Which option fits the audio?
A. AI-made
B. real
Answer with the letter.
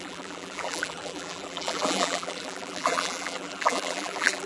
A